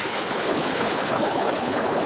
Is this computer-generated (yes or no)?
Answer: yes